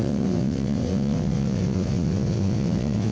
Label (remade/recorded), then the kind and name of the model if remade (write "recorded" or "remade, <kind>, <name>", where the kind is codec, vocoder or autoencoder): remade, vocoder, WaveNeXt